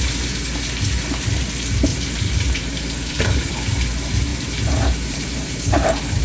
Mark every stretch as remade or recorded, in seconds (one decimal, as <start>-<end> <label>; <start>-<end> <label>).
0.0-1.9 recorded; 1.9-3.5 remade; 3.5-4.3 recorded; 4.3-6.2 remade